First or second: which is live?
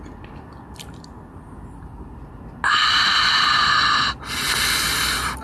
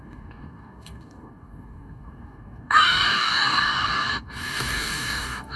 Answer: first